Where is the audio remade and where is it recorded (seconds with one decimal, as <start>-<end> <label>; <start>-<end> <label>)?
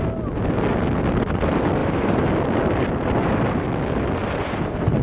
0.0-1.8 recorded; 1.8-2.3 remade; 2.3-4.2 recorded; 4.2-5.0 remade